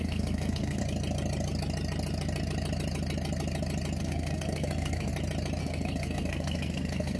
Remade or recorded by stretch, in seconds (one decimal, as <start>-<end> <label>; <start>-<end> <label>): 0.0-0.8 remade; 0.8-4.0 recorded; 4.0-5.1 remade; 5.1-5.6 recorded; 5.6-7.2 remade